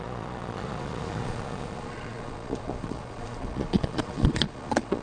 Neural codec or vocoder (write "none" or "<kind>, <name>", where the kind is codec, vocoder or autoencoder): vocoder, Vocos